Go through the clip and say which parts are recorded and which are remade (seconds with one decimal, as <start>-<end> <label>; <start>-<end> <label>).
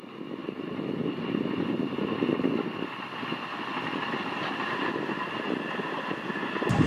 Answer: 0.0-0.4 recorded; 0.4-4.5 remade; 4.5-6.9 recorded